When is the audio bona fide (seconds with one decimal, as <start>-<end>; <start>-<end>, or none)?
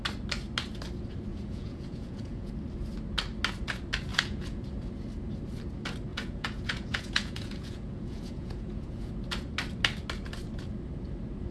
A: 0.0-1.3; 2.5-4.1; 4.6-6.1; 9.1-11.5